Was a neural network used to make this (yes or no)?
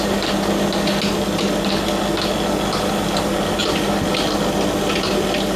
no